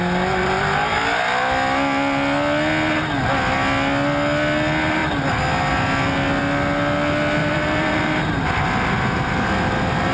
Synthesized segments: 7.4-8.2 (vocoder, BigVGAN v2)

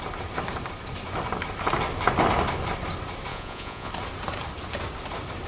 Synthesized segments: 3.3-3.9 (vocoder, Vocos)